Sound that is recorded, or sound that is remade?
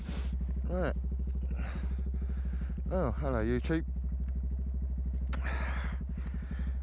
recorded